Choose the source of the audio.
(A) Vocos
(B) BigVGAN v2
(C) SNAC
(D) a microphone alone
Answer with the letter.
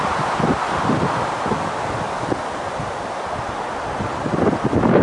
D